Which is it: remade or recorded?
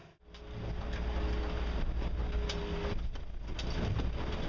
recorded